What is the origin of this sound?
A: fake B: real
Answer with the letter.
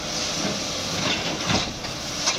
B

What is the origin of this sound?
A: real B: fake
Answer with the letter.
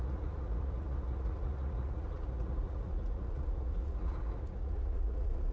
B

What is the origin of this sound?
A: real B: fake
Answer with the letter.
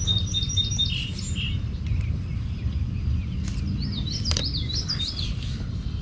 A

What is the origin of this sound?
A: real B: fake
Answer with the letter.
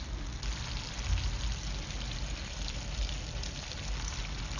A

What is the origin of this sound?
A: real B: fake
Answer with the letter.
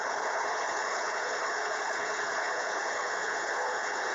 B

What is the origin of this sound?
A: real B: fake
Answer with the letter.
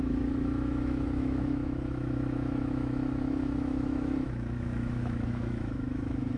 B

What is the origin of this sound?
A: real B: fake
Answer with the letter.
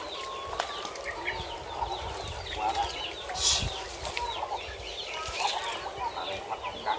A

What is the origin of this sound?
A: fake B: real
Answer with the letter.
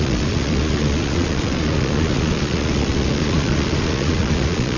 A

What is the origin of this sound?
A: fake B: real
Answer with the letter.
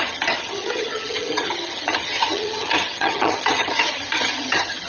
A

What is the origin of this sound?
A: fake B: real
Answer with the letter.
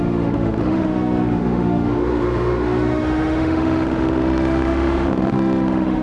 A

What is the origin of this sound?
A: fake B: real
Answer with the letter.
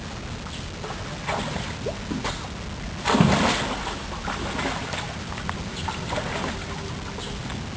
B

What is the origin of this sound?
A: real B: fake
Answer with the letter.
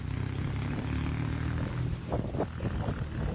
A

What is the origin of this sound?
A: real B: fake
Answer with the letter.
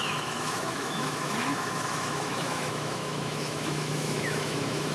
B